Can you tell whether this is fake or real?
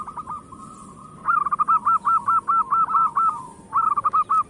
real